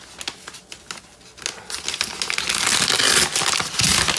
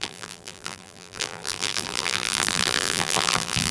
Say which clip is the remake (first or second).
second